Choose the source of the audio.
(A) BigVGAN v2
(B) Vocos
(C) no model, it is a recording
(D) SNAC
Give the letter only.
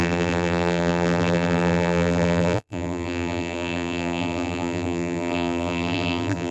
A